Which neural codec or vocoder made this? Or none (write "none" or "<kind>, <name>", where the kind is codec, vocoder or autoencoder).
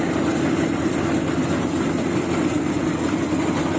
none